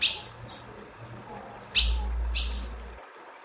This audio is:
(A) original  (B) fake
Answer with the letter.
A